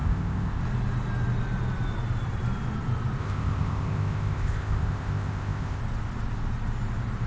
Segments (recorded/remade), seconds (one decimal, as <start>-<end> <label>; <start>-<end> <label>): 0.0-0.6 remade; 0.6-3.2 recorded; 3.2-5.8 remade; 5.8-7.3 recorded